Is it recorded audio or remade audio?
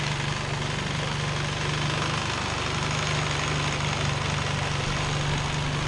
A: recorded